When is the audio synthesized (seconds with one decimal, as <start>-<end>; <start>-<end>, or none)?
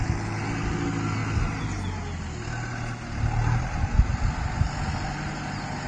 none